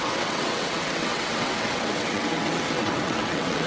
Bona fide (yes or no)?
no